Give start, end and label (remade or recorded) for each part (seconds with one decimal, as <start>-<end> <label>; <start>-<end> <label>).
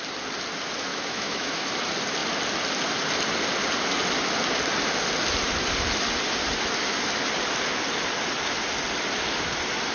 0.0-0.9 recorded; 0.9-1.7 remade; 1.7-9.9 recorded